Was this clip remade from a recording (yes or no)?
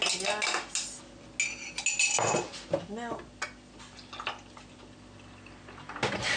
no